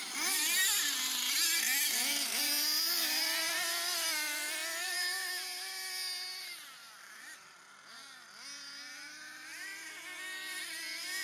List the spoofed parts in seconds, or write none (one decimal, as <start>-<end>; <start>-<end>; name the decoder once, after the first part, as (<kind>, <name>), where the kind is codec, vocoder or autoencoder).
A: 2.1-3.0 (vocoder, BigVGAN v2)